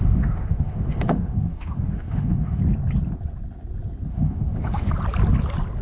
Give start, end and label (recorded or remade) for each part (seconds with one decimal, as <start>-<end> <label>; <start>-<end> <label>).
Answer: 0.0-2.6 remade; 2.6-4.1 recorded; 4.1-4.9 remade; 4.9-5.8 recorded